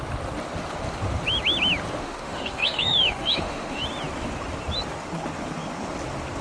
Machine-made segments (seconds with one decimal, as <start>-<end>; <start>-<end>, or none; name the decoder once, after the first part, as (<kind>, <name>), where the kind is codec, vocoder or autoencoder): 2.0-3.8 (autoencoder, DAC-VAE)